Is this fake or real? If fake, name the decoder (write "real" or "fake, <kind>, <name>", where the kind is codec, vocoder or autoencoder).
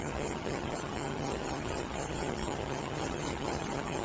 fake, vocoder, HiFi-GAN